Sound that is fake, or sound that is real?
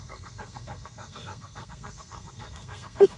fake